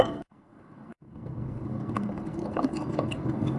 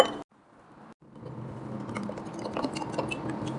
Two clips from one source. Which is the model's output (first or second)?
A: first